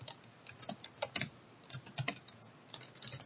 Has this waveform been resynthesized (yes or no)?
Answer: no